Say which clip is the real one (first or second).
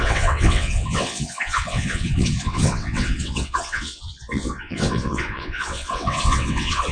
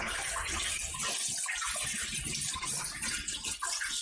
second